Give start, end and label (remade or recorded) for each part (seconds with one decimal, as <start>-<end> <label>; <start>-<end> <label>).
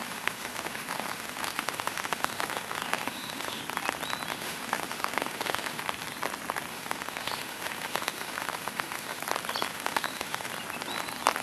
0.0-3.6 remade; 3.6-4.3 recorded; 4.3-5.8 remade; 5.8-6.7 recorded; 6.7-9.2 remade; 9.2-9.7 recorded; 9.7-10.5 remade; 10.5-11.4 recorded